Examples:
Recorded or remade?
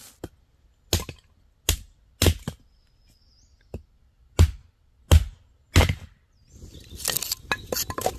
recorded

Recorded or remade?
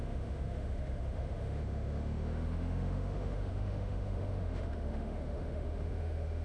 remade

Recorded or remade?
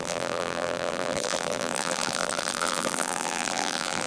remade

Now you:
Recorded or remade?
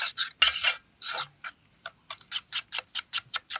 recorded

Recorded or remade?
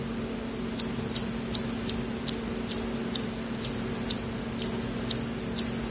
recorded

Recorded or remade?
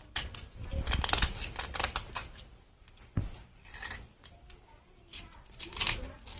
recorded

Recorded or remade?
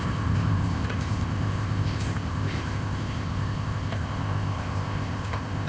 remade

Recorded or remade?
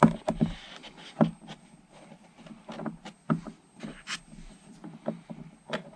recorded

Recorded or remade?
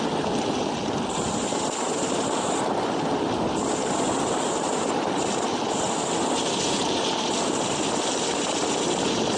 recorded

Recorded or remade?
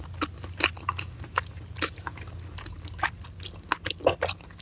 recorded